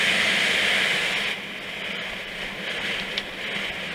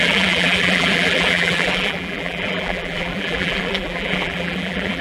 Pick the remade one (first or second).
second